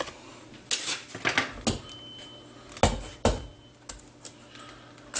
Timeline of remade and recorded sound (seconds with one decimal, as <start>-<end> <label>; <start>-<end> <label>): 0.0-5.2 recorded